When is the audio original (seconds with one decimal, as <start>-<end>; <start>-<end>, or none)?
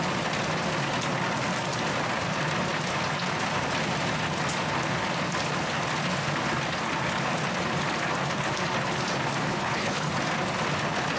0.0-9.5; 10.1-11.2